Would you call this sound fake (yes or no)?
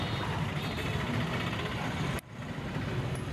no